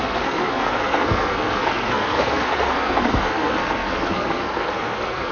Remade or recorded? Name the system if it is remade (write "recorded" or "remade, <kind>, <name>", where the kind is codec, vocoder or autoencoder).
remade, codec, SNAC